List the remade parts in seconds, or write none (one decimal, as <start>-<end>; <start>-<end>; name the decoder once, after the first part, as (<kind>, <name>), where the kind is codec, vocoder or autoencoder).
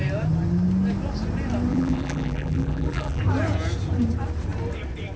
1.7-3.2 (vocoder, BigVGAN v2)